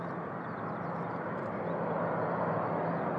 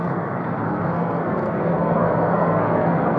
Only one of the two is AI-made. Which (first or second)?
second